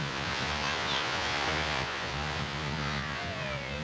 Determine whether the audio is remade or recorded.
remade